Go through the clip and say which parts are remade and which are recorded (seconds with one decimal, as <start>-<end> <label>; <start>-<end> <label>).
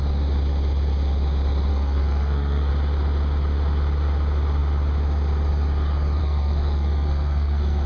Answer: 0.0-1.7 recorded; 1.7-2.7 remade; 2.7-6.2 recorded; 6.2-7.9 remade